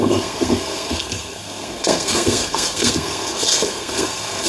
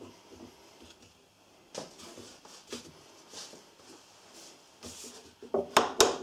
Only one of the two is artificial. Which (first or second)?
first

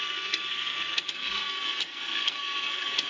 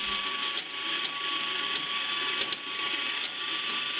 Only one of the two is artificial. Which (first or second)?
first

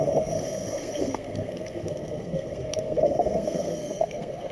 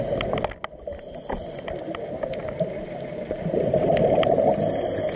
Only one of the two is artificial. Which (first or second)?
first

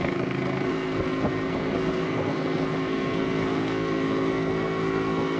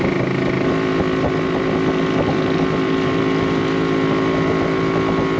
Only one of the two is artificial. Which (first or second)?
first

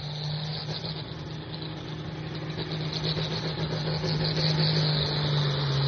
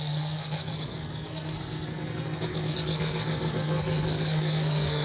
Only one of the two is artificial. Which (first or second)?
second